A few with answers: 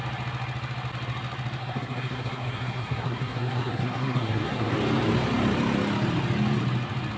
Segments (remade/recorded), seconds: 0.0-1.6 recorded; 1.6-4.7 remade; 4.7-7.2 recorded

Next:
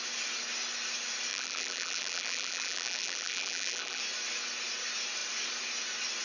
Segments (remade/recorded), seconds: 0.0-1.3 recorded; 1.3-4.0 remade; 4.0-6.2 recorded

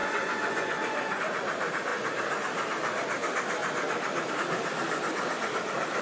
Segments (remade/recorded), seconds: 0.0-1.2 remade; 1.2-6.0 recorded

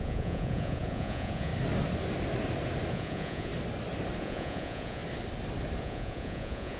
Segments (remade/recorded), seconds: 0.0-1.5 remade; 1.5-2.9 recorded; 2.9-3.5 remade; 3.5-4.2 recorded; 4.2-5.0 remade; 5.0-5.8 recorded; 5.8-6.8 remade

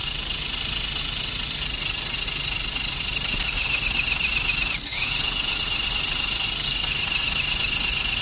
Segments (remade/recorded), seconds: 0.0-4.9 recorded; 4.9-5.6 remade; 5.6-8.2 recorded

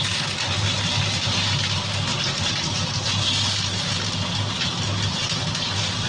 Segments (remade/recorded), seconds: 0.0-6.1 recorded